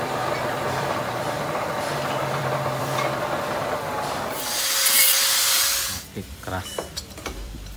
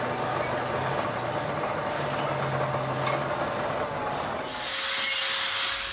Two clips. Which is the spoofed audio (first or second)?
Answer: first